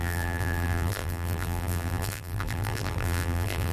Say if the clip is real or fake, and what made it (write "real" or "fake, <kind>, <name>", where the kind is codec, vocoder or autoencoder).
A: fake, vocoder, BigVGAN v2